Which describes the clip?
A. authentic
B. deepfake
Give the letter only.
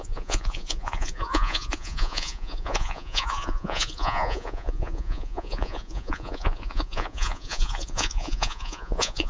B